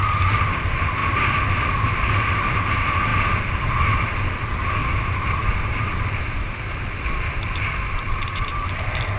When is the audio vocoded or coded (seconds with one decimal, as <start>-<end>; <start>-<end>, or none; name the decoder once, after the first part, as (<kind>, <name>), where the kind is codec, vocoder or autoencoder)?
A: 0.0-3.1 (vocoder, BigVGAN v2); 3.7-9.2